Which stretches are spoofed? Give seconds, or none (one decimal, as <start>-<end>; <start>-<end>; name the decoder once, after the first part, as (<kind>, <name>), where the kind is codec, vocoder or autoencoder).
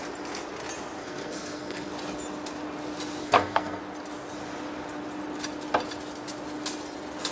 1.0-1.9 (codec, SNAC); 3.2-3.8